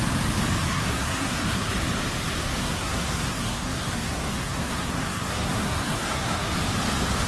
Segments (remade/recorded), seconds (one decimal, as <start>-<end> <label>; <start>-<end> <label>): 0.0-0.7 recorded; 0.7-1.7 remade; 1.7-2.6 recorded; 2.6-6.5 remade; 6.5-7.3 recorded